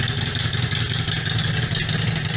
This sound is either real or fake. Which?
real